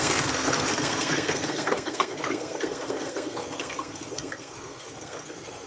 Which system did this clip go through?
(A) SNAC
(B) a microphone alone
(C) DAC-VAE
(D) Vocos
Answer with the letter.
A